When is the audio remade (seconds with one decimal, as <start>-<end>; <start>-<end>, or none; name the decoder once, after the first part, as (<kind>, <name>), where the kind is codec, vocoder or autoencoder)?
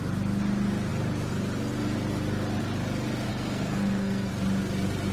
3.3-4.3 (codec, SNAC)